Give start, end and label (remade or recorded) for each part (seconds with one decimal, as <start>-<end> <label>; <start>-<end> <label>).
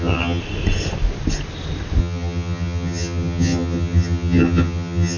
0.0-0.4 remade; 0.4-2.0 recorded; 2.0-5.2 remade